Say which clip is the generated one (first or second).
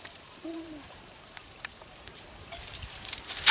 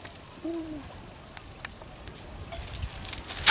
first